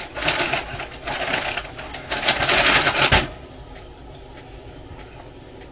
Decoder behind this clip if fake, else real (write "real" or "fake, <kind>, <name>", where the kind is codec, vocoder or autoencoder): real